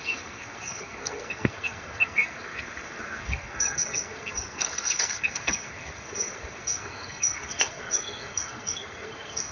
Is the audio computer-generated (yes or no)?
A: yes